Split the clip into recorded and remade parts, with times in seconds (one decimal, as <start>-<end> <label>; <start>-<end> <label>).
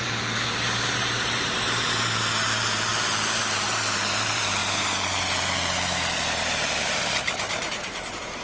0.0-2.9 remade; 2.9-3.4 recorded; 3.4-8.4 remade